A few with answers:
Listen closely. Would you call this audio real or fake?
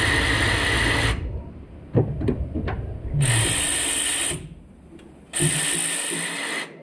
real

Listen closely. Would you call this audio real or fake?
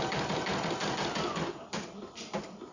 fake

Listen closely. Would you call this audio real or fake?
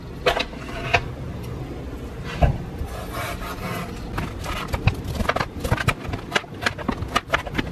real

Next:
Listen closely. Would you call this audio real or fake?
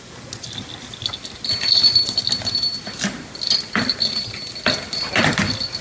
real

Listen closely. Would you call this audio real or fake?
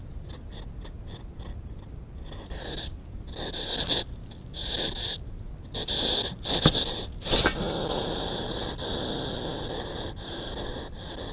real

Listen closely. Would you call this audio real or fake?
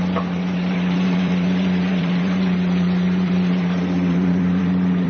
fake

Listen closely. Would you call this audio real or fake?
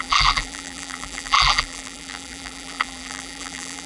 fake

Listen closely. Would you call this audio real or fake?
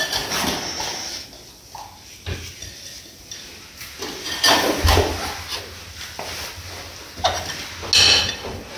real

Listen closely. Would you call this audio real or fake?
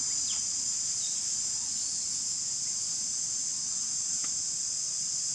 real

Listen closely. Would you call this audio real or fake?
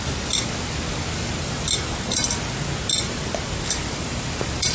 fake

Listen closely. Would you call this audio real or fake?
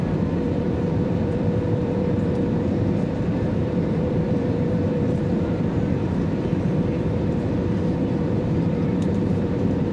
fake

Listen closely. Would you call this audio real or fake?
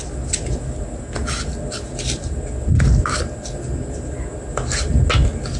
real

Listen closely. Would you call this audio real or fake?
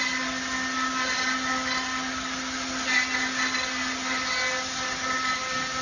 real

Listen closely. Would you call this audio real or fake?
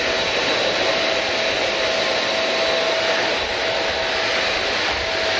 real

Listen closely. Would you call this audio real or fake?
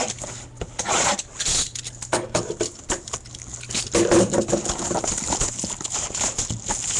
real